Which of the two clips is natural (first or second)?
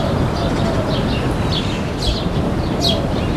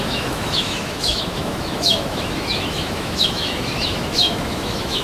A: first